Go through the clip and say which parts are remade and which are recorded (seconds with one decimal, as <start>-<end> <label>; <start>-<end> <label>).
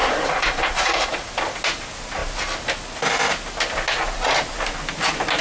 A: 0.0-1.3 remade; 1.3-5.4 recorded